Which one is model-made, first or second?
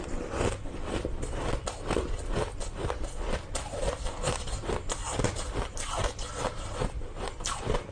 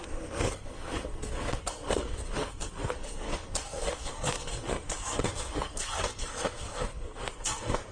second